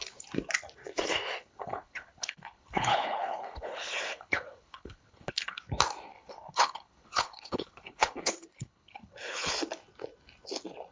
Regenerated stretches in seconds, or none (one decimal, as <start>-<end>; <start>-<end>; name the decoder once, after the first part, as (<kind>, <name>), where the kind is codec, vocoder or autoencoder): 1.4-5.6 (codec, HILCodec); 6.1-9.5